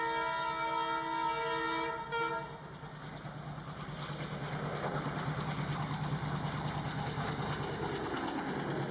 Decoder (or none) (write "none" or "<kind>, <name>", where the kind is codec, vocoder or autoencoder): none